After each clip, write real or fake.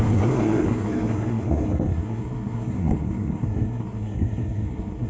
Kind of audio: fake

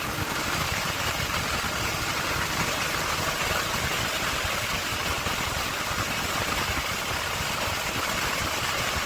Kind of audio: real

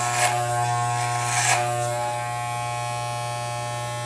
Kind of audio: real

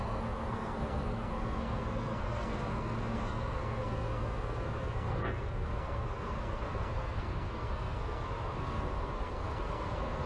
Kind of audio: fake